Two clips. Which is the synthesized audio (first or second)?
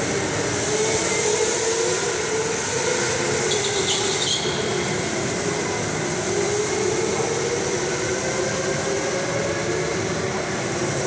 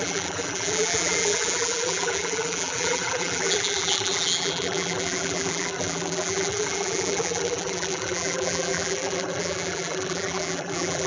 second